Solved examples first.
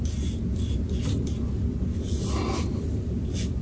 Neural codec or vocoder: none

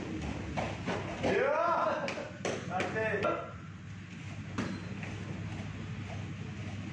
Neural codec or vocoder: none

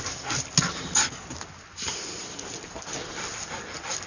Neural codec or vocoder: none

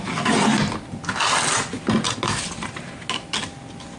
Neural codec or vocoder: none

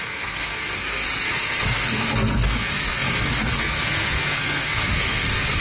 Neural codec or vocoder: codec, SNAC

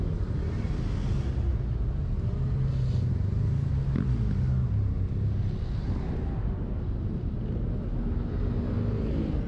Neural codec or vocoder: none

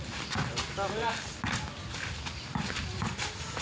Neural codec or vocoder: none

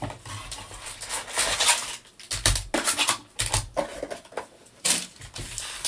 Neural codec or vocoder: none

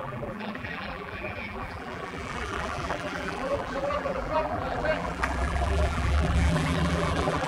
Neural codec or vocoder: vocoder, BigVGAN v2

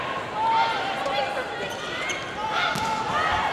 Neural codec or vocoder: none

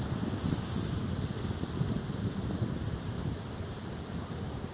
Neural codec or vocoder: none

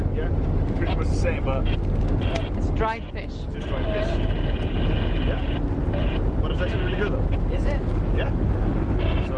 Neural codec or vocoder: none